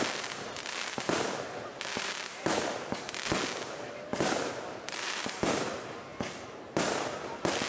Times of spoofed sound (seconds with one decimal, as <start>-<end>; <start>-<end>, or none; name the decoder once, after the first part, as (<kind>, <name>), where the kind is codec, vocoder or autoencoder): 1.7-2.7 (vocoder, BigVGAN v2); 4.1-5.5